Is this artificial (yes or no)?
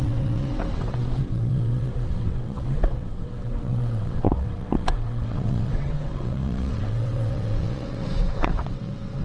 yes